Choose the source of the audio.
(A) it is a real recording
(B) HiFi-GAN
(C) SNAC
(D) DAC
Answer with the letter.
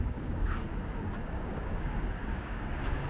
D